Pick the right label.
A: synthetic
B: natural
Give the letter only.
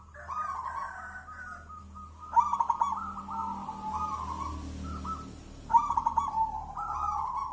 B